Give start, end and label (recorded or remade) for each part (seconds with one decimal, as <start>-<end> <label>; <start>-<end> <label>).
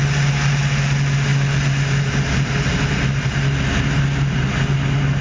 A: 0.0-5.2 recorded